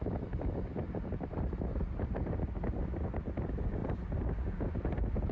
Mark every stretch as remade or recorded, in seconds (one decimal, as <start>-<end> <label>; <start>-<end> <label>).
0.0-1.3 recorded; 1.3-2.1 remade; 2.1-3.8 recorded; 3.8-4.3 remade; 4.3-5.3 recorded

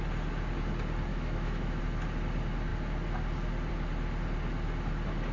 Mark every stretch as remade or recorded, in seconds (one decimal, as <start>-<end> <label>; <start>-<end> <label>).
0.0-1.1 recorded; 1.1-1.8 remade; 1.8-5.3 recorded

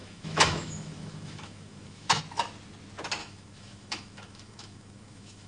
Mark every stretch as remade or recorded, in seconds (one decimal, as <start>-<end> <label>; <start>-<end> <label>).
0.0-2.2 remade; 2.2-3.2 recorded; 3.2-5.5 remade

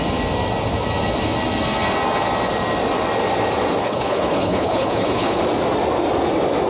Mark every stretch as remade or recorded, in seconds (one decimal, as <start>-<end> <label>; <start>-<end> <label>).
0.0-3.8 recorded; 3.8-5.4 remade; 5.4-6.7 recorded

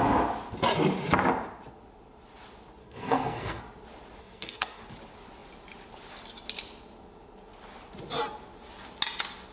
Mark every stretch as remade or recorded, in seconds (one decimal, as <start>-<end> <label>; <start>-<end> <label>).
0.0-2.8 recorded; 2.8-3.6 remade; 3.6-4.2 recorded; 4.2-4.8 remade; 4.8-9.5 recorded

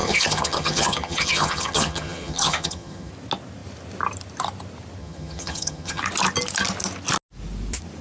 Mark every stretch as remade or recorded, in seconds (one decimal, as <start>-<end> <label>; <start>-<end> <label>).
0.0-3.1 remade; 3.1-5.0 recorded; 5.0-6.0 remade; 6.0-8.0 recorded

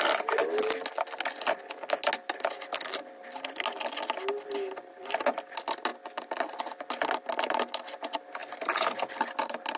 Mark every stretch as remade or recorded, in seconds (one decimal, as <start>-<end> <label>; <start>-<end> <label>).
0.0-9.8 recorded

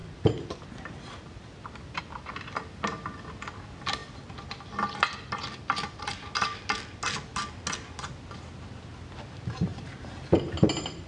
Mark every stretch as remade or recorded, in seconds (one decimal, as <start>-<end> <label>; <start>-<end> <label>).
0.0-2.0 remade; 2.0-9.7 recorded; 9.7-10.4 remade; 10.4-11.1 recorded